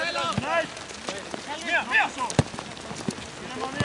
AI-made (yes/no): no